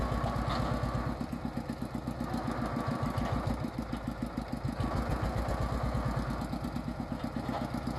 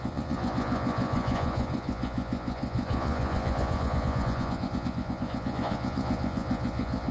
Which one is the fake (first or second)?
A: second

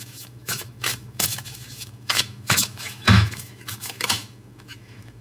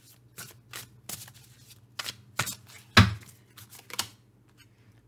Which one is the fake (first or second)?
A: first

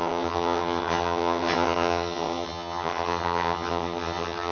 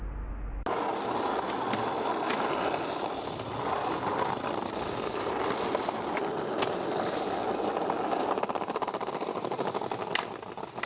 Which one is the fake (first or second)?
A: first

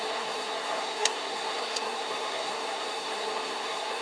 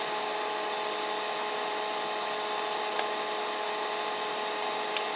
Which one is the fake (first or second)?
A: first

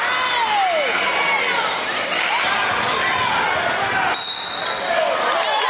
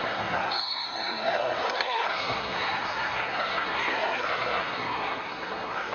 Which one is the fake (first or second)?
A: second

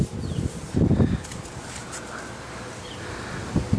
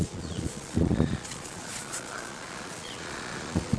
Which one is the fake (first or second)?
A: second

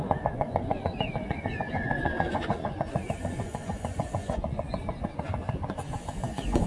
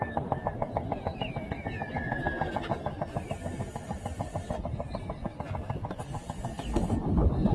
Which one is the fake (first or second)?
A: first